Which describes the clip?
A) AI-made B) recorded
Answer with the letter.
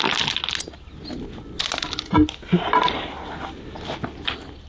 B